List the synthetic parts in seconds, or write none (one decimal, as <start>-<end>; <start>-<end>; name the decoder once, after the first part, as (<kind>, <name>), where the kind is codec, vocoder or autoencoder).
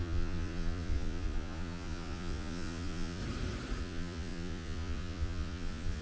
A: 0.0-3.2 (vocoder, Vocos); 3.8-6.0